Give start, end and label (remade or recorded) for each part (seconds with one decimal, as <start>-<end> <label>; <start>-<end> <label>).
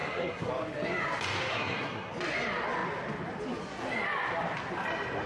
0.0-0.5 remade; 0.5-1.5 recorded; 1.5-2.1 remade; 2.1-5.3 recorded